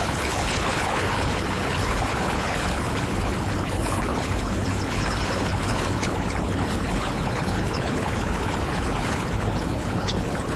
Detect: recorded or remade remade